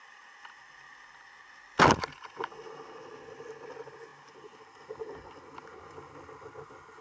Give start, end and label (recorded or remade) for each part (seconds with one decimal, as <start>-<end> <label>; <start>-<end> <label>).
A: 0.0-7.0 recorded